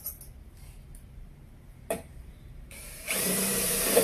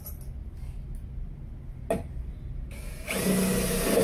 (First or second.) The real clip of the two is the second